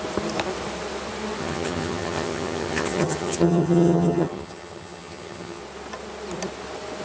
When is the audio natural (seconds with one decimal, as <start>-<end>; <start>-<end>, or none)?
0.0-1.4; 5.6-7.0